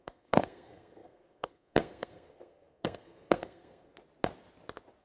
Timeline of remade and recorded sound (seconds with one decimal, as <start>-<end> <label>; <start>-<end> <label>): 0.0-3.9 remade; 3.9-5.0 recorded